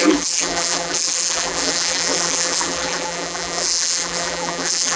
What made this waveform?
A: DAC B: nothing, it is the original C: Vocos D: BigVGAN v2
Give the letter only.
D